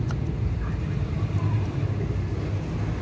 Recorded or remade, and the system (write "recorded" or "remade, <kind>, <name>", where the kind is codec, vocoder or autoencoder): recorded